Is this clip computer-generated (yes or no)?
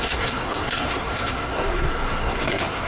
yes